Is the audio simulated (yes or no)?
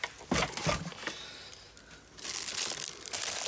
no